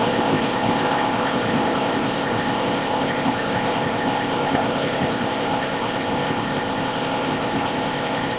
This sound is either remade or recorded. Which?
remade